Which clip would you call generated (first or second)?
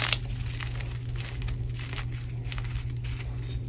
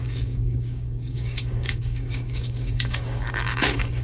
second